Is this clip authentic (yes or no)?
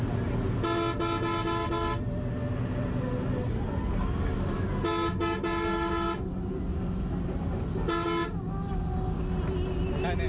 yes